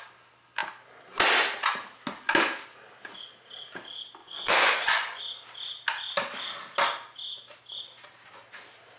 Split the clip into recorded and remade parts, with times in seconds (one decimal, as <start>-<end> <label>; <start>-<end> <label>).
0.0-4.2 recorded; 4.2-5.2 remade; 5.2-9.0 recorded